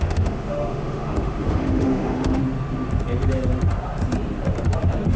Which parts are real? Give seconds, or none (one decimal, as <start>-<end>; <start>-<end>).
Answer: 2.4-5.2

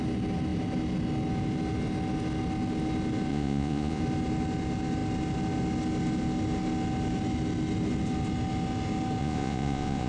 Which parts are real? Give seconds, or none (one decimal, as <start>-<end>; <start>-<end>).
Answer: 0.0-3.3; 4.0-9.2

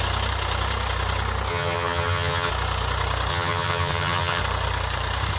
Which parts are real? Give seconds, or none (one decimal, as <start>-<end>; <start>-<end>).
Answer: 0.0-1.5; 2.5-3.3; 4.4-5.4